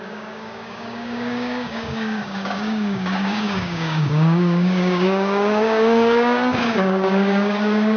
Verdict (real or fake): fake